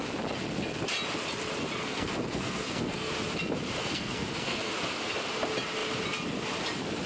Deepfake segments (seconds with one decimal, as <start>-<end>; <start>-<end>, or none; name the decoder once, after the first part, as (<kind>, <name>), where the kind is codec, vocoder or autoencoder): 1.8-3.1 (codec, SNAC); 3.8-4.7